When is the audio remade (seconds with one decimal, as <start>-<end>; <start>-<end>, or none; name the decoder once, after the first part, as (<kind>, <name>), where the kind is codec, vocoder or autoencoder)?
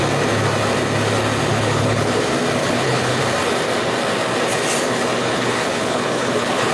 1.5-2.2 (codec, HILCodec); 2.6-3.2; 5.2-6.7